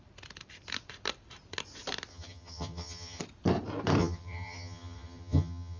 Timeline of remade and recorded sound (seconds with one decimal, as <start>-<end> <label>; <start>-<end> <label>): 0.0-2.1 recorded; 2.1-3.2 remade; 3.2-4.0 recorded; 4.0-5.8 remade